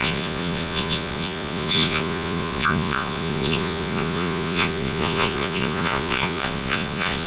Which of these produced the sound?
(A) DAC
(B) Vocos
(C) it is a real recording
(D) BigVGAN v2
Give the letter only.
B